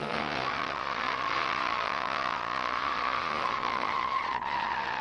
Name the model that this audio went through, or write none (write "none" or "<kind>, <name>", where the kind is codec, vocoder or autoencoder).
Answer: vocoder, Vocos